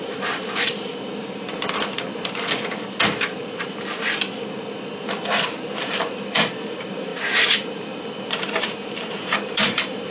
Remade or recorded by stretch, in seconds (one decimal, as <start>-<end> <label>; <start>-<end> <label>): 0.0-0.9 remade; 0.9-5.8 recorded; 5.8-7.1 remade; 7.1-8.4 recorded; 8.4-10.1 remade